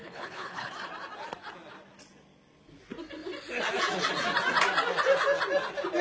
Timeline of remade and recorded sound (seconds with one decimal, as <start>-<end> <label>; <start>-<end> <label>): 0.0-0.7 remade; 0.7-6.0 recorded